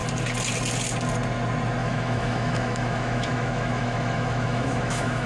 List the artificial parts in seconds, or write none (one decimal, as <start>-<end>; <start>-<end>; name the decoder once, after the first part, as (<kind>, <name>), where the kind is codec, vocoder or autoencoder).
1.8-5.3 (autoencoder, DAC-VAE)